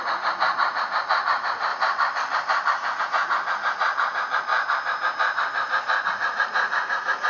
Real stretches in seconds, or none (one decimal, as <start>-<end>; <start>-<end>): 1.7-3.0; 4.5-6.1